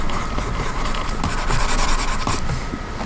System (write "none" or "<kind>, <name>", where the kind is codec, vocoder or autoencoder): none